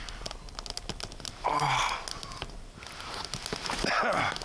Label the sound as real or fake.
real